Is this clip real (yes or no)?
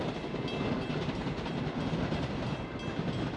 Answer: yes